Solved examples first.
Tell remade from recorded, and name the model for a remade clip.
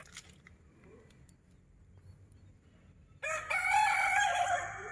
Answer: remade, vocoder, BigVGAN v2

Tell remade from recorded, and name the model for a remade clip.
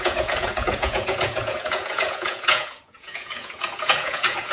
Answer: remade, vocoder, Vocos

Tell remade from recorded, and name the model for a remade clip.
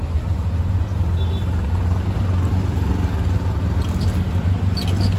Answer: recorded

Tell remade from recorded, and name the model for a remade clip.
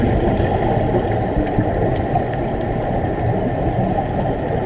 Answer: recorded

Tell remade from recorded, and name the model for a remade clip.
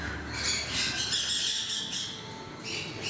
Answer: recorded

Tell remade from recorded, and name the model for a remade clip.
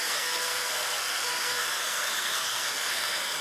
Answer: remade, codec, SNAC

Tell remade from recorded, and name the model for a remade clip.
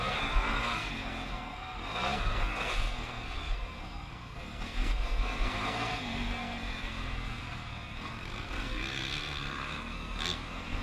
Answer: remade, codec, SNAC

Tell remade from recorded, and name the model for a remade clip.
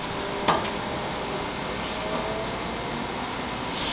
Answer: recorded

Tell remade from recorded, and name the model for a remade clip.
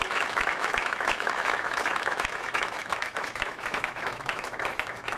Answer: remade, autoencoder, DAC-VAE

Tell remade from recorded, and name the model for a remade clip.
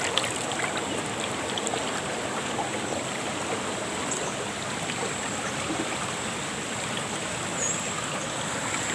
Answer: recorded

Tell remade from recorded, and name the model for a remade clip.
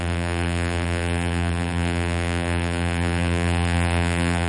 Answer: remade, vocoder, BigVGAN v2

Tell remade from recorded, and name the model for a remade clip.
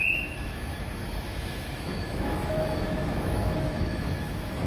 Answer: remade, autoencoder, DAC-VAE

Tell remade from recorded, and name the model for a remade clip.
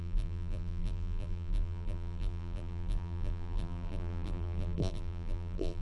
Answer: remade, vocoder, BigVGAN v2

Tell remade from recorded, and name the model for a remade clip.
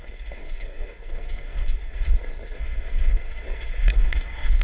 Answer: remade, codec, SNAC